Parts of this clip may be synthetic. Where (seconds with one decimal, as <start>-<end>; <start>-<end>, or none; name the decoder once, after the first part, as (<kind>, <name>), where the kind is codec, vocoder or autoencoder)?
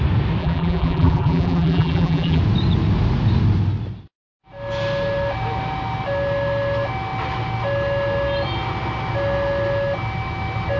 0.4-2.4 (vocoder, BigVGAN v2)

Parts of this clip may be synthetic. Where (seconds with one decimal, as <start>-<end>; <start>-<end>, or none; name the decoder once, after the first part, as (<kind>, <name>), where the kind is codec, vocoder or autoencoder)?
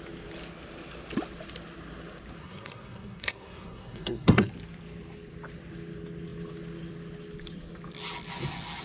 2.4-4.5 (codec, SNAC)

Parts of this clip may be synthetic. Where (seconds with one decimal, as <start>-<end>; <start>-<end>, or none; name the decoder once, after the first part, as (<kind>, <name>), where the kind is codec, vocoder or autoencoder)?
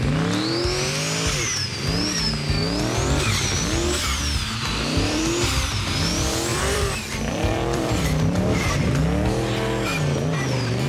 3.6-5.2 (vocoder, BigVGAN v2); 6.5-8.8